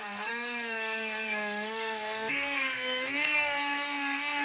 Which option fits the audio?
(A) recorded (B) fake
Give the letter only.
B